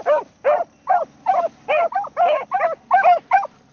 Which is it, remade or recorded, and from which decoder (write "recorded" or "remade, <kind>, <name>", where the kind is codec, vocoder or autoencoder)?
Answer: recorded